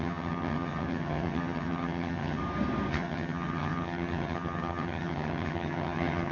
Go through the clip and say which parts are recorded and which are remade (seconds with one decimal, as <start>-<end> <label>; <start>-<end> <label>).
0.0-2.4 remade; 2.4-2.9 recorded; 2.9-6.3 remade